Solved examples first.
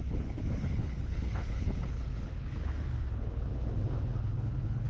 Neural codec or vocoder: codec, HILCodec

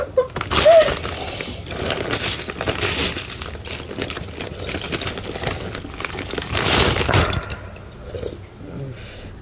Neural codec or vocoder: none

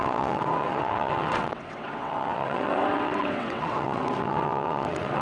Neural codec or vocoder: vocoder, WaveNeXt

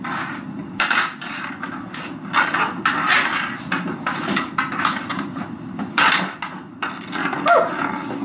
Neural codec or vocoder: none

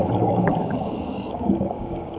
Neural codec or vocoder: codec, DAC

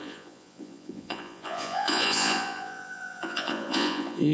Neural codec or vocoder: vocoder, Vocos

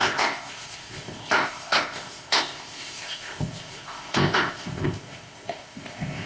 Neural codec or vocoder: codec, ZipCodec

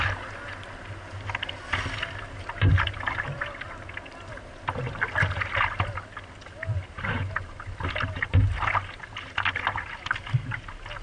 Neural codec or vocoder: none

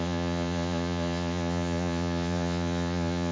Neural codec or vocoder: vocoder, Vocos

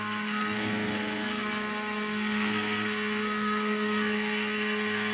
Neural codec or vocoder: codec, SNAC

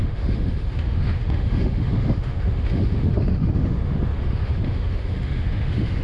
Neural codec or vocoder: autoencoder, DAC-VAE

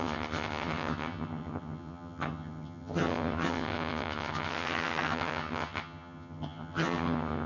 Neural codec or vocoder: vocoder, HiFi-GAN